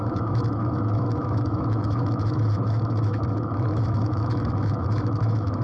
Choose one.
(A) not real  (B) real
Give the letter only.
A